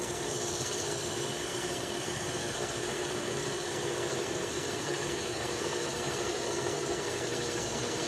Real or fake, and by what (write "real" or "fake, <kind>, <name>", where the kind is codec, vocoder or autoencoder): fake, codec, SNAC